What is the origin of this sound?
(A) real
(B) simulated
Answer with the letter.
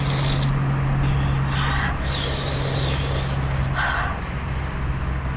A